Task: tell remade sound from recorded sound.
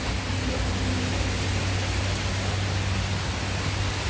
recorded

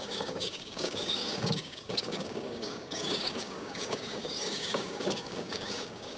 remade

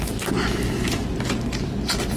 recorded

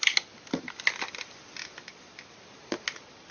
recorded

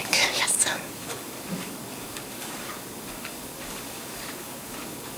remade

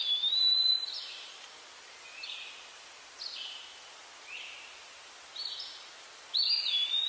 recorded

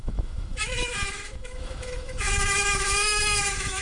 remade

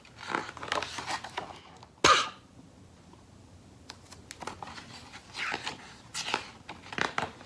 recorded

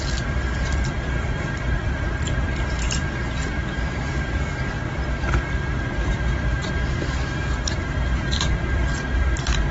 remade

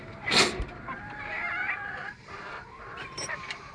remade